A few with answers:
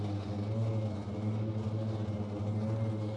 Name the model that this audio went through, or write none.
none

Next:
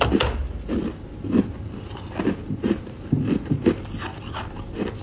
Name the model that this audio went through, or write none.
none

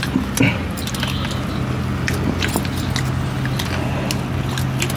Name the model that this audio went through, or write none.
none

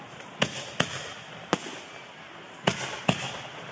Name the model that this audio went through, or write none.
none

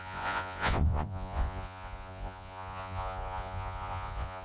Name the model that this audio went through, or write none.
vocoder, Vocos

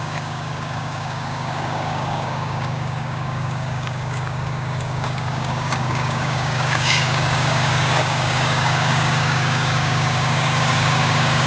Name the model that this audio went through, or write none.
codec, DAC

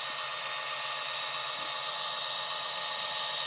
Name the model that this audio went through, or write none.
none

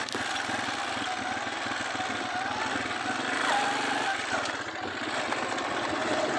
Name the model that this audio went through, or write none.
none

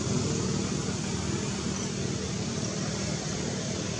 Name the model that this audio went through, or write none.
none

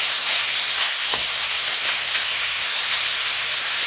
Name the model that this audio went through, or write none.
codec, SNAC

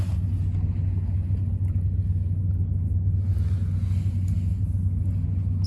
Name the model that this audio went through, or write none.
none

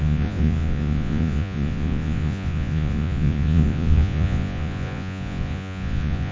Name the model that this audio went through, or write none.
vocoder, Vocos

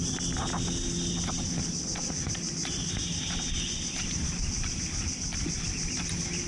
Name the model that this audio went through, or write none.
none